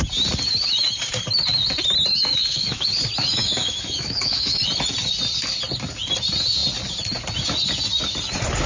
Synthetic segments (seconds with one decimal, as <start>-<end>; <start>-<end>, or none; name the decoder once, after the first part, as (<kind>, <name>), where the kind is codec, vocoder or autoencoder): 2.1-2.9 (autoencoder, DAC-VAE); 3.3-4.6